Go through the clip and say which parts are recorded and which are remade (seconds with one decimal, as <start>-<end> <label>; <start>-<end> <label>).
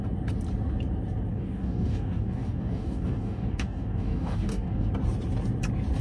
0.0-1.3 recorded; 1.3-4.9 remade; 4.9-6.0 recorded